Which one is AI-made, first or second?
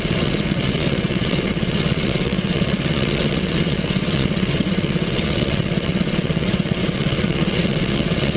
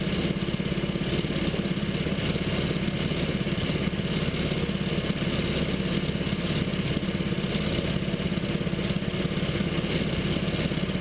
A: first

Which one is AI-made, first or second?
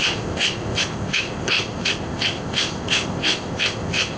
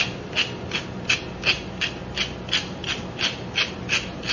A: first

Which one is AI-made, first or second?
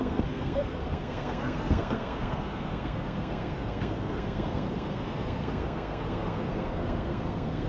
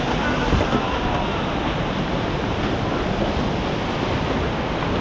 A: first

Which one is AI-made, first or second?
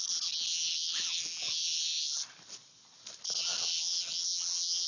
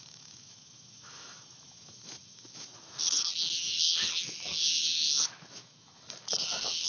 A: second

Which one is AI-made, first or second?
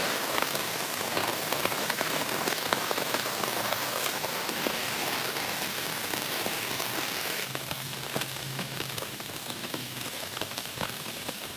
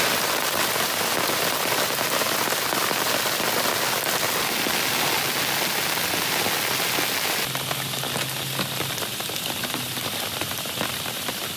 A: first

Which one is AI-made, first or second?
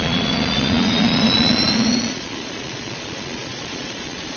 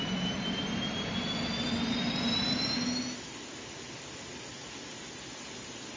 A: first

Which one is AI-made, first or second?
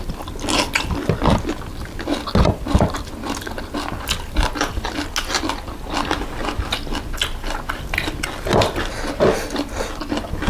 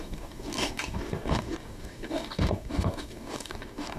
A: second